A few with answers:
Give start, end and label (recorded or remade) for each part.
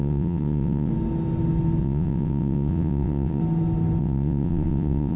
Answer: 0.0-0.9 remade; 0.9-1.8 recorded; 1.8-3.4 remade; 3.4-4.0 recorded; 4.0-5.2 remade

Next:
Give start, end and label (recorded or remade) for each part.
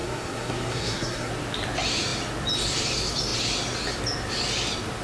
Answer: 0.0-1.3 remade; 1.3-5.0 recorded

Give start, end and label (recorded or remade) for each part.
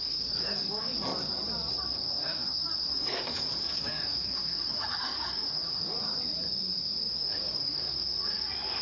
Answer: 0.0-1.1 remade; 1.1-1.7 recorded; 1.7-6.0 remade; 6.0-7.1 recorded; 7.1-8.8 remade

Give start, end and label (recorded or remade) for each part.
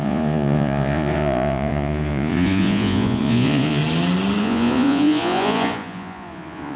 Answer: 0.0-3.8 remade; 3.8-4.4 recorded; 4.4-6.8 remade